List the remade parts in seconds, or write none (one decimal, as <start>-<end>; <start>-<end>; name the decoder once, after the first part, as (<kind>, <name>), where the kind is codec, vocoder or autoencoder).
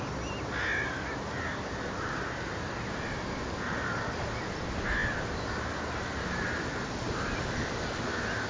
none